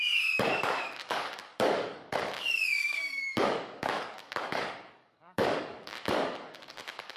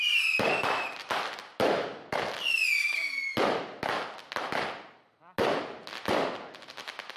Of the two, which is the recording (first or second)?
second